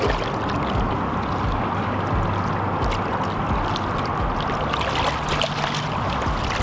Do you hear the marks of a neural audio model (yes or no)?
no